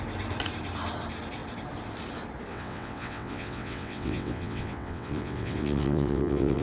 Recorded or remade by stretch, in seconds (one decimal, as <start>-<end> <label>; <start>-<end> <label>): 0.0-2.5 recorded; 2.5-6.6 remade